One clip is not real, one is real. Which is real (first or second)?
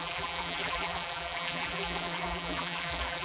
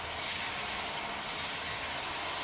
second